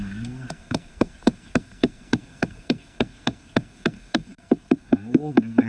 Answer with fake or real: fake